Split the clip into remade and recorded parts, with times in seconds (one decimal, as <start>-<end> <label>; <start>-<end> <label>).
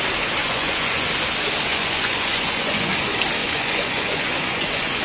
0.0-0.4 recorded; 0.4-1.1 remade; 1.1-1.7 recorded; 1.7-2.9 remade; 2.9-3.4 recorded; 3.4-5.0 remade